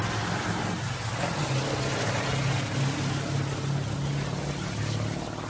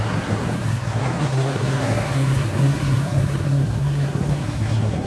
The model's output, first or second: second